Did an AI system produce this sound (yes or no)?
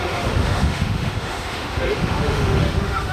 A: yes